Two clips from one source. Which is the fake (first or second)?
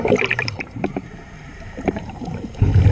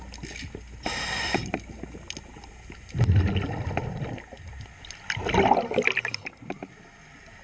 first